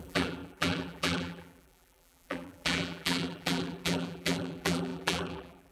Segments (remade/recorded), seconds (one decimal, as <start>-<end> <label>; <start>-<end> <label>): 0.0-5.7 remade